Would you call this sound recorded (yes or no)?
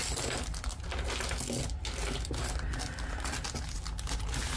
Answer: yes